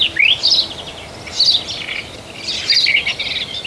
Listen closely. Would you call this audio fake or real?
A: real